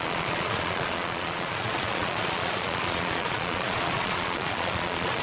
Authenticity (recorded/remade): remade